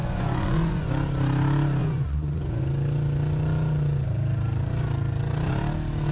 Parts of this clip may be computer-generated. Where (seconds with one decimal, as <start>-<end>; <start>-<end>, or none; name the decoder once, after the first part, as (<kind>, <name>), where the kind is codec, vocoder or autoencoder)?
0.0-0.9 (vocoder, Vocos); 1.8-2.6